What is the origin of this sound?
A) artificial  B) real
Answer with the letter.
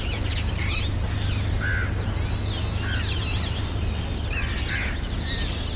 B